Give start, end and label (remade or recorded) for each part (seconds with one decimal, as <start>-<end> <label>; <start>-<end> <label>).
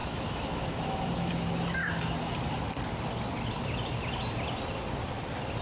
0.0-1.3 remade; 1.3-5.6 recorded